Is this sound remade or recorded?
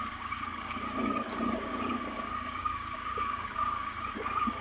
remade